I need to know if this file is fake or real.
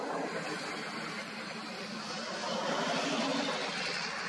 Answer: real